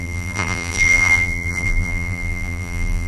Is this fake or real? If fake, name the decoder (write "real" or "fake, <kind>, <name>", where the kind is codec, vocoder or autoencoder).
fake, vocoder, BigVGAN v2